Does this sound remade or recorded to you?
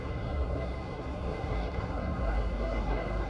remade